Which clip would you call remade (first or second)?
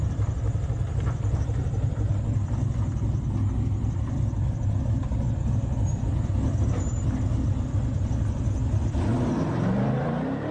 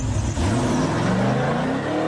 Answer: first